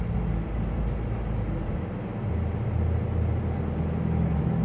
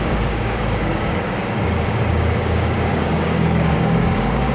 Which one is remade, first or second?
second